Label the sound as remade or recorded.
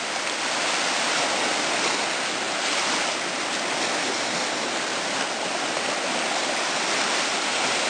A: recorded